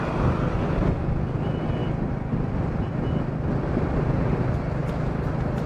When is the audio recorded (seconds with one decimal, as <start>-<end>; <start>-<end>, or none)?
0.0-5.7

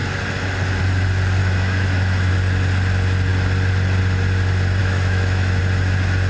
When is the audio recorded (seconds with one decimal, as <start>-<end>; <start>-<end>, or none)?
0.0-1.4; 2.3-4.8; 5.6-6.3